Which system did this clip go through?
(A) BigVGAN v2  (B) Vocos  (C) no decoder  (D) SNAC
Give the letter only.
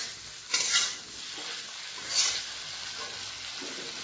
C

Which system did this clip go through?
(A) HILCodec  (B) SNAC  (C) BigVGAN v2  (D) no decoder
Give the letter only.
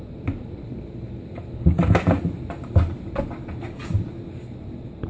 D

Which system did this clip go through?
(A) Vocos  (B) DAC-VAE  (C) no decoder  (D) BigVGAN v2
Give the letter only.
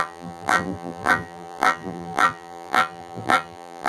D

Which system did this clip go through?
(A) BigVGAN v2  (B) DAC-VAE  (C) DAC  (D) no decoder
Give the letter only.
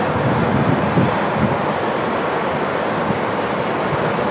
D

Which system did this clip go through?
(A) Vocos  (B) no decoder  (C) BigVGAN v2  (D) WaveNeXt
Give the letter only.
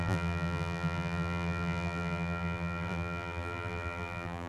C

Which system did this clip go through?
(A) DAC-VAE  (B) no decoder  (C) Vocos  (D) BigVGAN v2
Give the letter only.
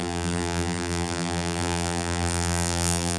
D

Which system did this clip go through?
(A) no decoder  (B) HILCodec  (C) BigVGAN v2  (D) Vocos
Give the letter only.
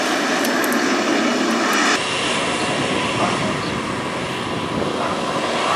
A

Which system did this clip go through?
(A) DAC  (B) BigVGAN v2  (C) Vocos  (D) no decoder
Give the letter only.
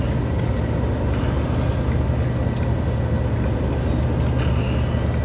D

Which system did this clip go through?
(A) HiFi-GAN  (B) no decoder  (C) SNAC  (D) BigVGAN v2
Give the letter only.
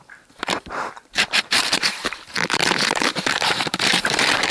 D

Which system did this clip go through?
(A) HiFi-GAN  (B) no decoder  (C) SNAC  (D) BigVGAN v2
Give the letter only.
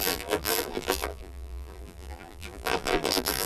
D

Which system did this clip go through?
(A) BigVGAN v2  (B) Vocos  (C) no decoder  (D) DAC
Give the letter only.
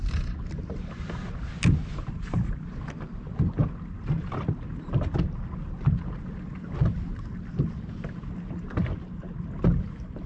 C